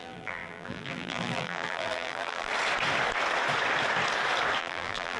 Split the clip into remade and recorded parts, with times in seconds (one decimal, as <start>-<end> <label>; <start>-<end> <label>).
0.0-2.5 remade; 2.5-4.6 recorded; 4.6-5.2 remade